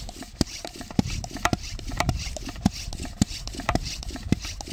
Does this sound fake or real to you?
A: real